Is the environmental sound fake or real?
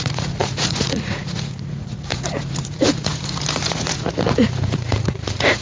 fake